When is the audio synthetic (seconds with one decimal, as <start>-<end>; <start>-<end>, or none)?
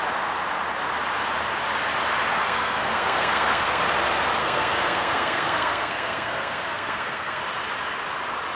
2.3-3.8; 4.4-7.4